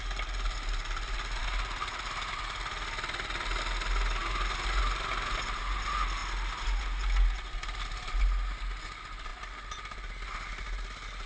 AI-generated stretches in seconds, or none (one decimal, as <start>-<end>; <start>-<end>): none